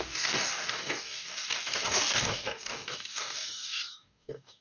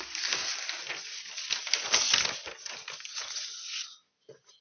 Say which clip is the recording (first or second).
second